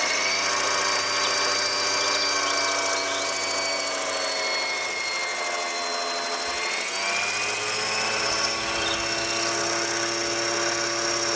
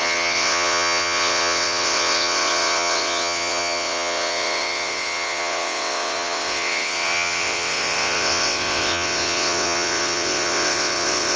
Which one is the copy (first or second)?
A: second